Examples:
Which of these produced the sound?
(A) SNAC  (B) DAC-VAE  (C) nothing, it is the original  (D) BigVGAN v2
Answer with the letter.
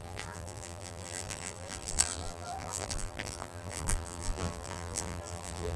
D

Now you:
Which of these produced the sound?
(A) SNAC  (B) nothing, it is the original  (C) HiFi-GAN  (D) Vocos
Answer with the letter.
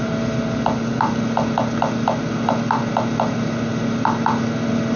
B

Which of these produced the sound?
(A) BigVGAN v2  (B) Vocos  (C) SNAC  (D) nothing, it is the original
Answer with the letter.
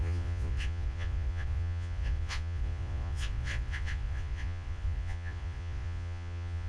B